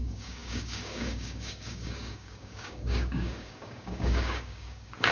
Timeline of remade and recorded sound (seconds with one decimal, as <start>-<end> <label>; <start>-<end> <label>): 0.0-5.1 remade